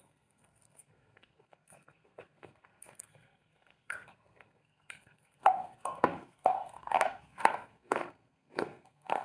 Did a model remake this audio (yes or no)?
yes